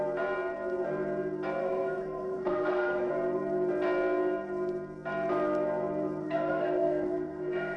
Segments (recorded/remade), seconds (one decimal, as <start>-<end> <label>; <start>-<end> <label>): 0.0-1.6 recorded; 1.6-3.1 remade; 3.1-6.2 recorded; 6.2-7.8 remade